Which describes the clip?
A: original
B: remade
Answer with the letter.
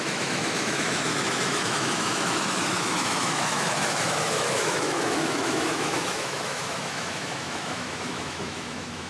B